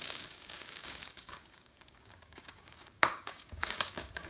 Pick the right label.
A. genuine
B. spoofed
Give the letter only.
B